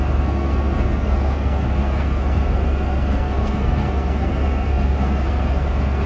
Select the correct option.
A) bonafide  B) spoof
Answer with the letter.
B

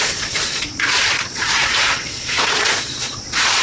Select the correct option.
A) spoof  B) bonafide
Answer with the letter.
A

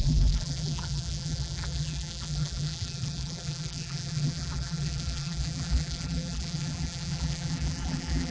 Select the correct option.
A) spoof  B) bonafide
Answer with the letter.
A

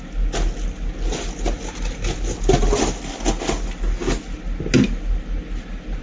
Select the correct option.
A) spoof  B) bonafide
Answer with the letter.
B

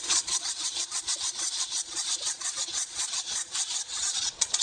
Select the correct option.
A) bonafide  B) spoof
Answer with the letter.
B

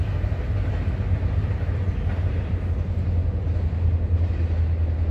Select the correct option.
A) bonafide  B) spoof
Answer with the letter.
A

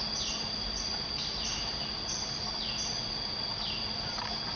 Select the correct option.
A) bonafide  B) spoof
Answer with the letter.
A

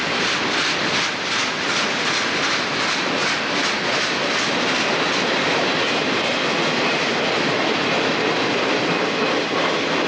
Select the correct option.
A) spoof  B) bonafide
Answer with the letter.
B